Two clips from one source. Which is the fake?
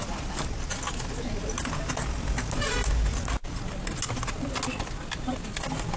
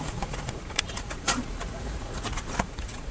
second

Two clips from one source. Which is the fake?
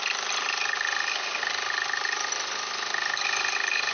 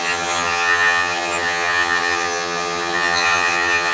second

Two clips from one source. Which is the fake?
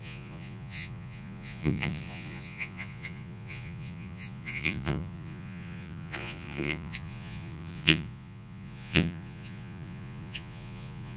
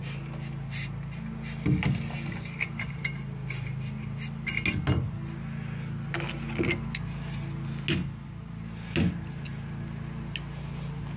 first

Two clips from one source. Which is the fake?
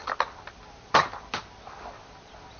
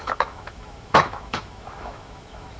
second